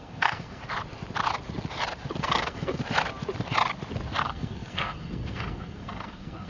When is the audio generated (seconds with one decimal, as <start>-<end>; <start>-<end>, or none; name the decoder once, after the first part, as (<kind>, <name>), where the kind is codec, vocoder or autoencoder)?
0.0-0.6 (codec, SNAC); 2.2-2.8; 4.2-6.5